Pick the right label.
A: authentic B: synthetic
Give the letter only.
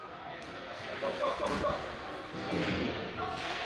B